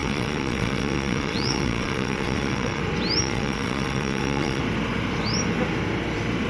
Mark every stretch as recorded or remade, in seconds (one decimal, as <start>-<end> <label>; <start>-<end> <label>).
0.0-2.8 remade; 2.8-3.2 recorded; 3.2-4.6 remade; 4.6-6.5 recorded

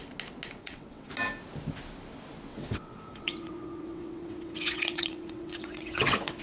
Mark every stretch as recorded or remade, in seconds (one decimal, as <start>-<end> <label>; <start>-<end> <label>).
0.0-0.6 recorded; 0.6-1.1 remade; 1.1-2.5 recorded; 2.5-6.4 remade

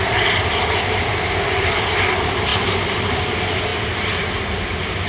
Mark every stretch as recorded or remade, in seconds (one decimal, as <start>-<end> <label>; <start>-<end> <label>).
0.0-5.1 recorded

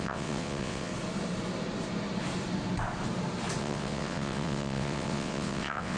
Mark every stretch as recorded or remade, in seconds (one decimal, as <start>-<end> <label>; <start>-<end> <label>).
0.0-0.9 remade; 0.9-3.6 recorded; 3.6-6.0 remade

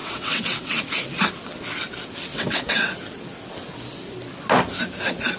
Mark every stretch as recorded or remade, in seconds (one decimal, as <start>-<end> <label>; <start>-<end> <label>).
0.0-0.8 remade; 0.8-2.3 recorded; 2.3-2.9 remade; 2.9-5.4 recorded